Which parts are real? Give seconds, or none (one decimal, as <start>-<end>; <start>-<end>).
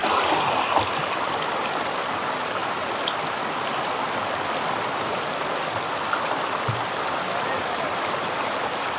0.0-1.0; 2.6-4.3